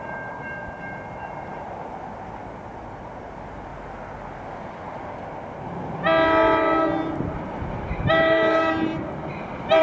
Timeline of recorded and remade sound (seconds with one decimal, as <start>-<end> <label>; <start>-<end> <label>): 0.0-1.7 remade; 1.7-2.6 recorded; 2.6-3.7 remade; 3.7-7.3 recorded; 7.3-8.9 remade; 8.9-9.8 recorded